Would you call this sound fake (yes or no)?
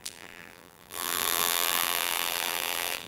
yes